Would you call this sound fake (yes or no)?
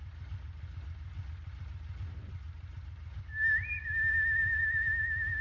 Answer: no